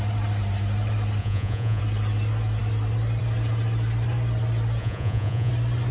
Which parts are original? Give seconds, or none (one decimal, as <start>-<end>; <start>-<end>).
0.0-1.2; 1.8-4.8; 5.5-5.9